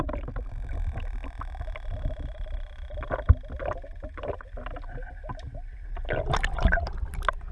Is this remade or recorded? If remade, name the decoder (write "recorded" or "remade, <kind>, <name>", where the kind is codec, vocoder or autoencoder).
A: recorded